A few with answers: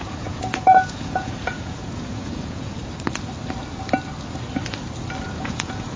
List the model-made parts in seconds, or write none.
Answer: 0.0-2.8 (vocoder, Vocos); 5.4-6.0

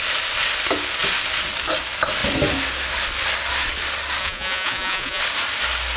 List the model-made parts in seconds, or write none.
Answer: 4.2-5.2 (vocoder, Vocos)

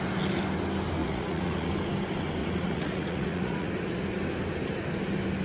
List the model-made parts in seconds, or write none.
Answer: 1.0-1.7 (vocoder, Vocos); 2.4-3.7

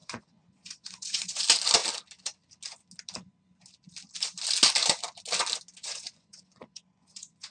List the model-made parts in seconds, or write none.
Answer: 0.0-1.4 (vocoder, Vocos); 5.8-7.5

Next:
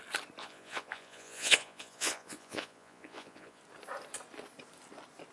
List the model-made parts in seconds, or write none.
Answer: 0.4-3.6 (vocoder, Vocos)